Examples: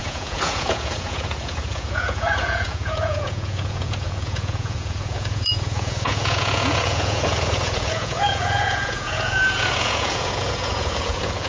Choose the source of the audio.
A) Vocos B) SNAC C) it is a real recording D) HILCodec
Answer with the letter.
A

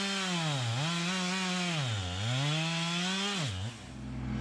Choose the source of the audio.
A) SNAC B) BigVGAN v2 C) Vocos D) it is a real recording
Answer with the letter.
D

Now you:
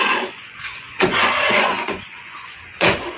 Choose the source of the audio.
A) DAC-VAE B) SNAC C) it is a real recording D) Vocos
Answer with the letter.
D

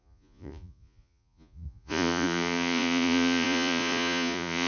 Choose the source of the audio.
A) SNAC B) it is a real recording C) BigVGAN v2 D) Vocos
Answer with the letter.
D